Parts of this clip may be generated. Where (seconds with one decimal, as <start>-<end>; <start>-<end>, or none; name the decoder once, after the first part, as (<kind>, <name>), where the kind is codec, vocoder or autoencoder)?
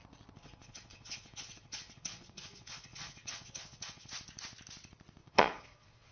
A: 0.4-4.1 (vocoder, Vocos); 5.2-6.1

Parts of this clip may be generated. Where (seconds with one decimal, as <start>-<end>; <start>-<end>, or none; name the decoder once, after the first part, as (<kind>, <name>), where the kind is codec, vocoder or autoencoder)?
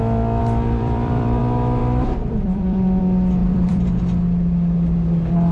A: 0.4-1.4 (vocoder, BigVGAN v2); 1.8-3.0; 3.4-4.0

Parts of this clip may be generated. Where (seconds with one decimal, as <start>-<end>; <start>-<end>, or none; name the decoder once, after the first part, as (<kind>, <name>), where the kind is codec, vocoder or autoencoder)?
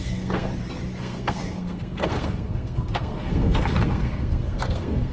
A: 0.0-0.5 (codec, SNAC); 1.0-5.1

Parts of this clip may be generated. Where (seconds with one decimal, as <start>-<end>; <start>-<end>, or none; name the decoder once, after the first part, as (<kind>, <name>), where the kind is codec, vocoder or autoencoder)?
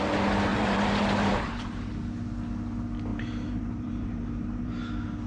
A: 0.5-1.9 (vocoder, BigVGAN v2); 3.1-4.8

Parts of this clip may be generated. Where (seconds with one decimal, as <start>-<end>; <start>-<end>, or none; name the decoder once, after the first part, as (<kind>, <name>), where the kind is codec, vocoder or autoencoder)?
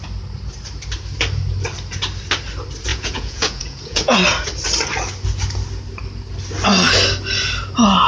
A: 2.9-4.2 (vocoder, Vocos)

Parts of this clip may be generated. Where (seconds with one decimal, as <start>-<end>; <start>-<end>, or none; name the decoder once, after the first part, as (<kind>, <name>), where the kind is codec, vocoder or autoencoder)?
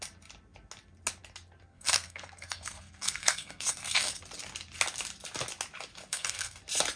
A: 1.7-4.2 (codec, SNAC); 6.1-6.6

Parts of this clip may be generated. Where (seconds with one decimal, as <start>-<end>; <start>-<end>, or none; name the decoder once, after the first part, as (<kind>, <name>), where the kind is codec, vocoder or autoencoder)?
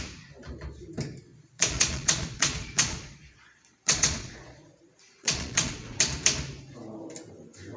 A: 1.3-6.0 (vocoder, Vocos)